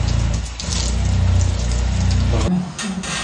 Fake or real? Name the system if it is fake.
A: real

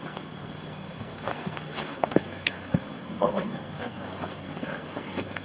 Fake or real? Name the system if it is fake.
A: fake, codec, SNAC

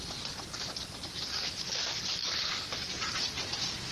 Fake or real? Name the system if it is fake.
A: fake, vocoder, BigVGAN v2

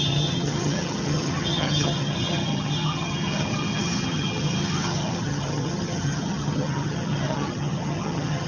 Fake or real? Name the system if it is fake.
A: fake, vocoder, HiFi-GAN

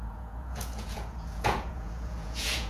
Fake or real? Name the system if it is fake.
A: fake, vocoder, Vocos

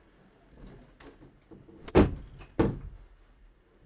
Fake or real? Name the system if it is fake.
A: real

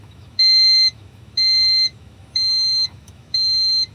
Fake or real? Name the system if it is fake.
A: fake, autoencoder, DAC-VAE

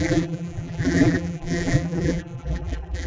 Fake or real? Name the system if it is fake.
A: fake, vocoder, BigVGAN v2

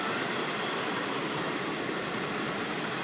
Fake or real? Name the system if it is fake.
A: real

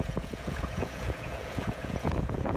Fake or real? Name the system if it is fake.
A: fake, vocoder, Vocos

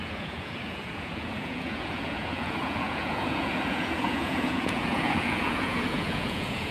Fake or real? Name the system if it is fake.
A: fake, vocoder, Vocos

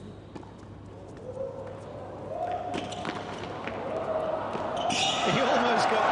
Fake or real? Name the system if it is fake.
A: real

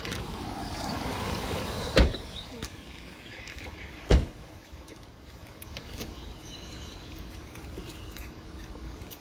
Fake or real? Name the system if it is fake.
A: fake, codec, DAC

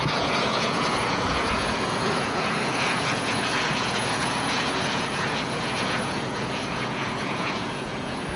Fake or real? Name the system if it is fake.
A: fake, vocoder, Vocos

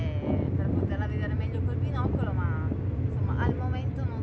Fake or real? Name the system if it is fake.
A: real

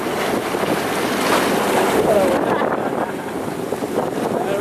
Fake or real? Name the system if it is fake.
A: real